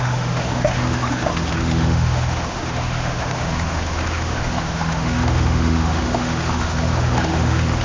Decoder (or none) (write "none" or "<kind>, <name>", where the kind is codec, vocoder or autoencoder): autoencoder, DAC-VAE